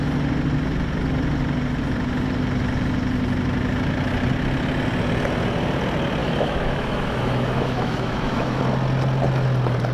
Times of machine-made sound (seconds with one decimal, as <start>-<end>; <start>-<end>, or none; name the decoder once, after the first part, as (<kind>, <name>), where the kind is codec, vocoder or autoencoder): 6.2-8.6 (autoencoder, DAC-VAE)